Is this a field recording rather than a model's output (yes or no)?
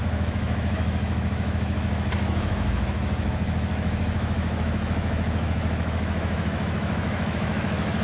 no